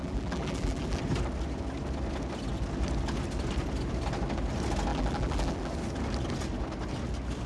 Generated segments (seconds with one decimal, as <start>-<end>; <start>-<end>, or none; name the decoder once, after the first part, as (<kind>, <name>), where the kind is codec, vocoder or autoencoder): 0.0-1.0 (vocoder, BigVGAN v2); 4.9-5.7